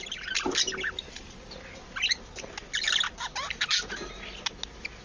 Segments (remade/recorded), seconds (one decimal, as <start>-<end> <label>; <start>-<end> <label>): 0.0-5.0 recorded